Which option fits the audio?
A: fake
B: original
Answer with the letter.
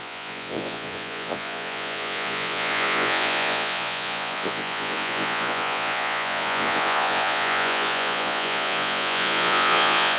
A